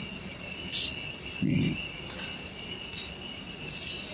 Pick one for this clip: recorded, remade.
recorded